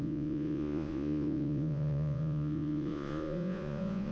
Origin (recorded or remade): remade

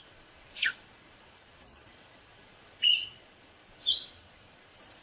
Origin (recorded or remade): remade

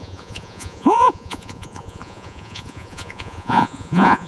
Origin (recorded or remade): remade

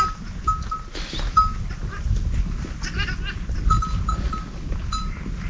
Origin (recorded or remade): recorded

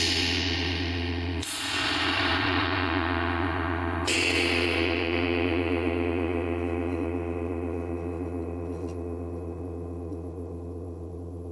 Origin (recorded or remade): remade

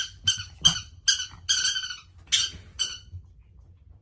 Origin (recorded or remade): recorded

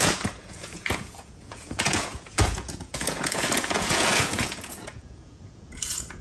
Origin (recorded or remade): remade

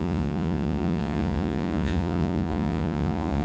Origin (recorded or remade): remade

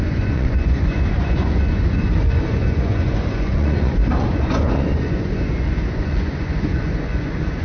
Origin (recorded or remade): remade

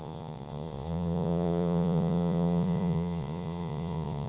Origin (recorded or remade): remade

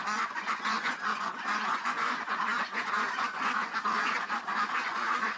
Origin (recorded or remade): remade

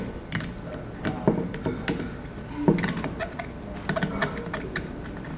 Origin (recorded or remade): recorded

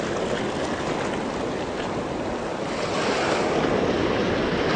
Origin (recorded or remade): recorded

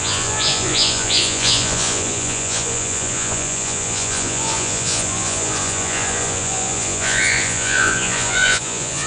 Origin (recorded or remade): remade